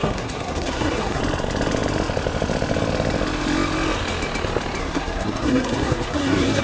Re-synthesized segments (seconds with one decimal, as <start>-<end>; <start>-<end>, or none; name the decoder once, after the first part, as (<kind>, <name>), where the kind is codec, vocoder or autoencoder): 0.0-1.2 (codec, SNAC); 4.8-6.6